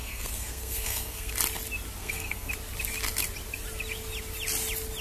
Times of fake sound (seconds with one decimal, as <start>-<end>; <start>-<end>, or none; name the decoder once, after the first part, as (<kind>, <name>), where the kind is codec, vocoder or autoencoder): 0.0-1.3 (codec, SNAC); 2.0-2.5